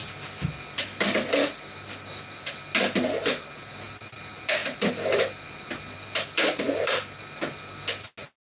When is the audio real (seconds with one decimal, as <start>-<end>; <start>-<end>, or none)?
0.0-8.6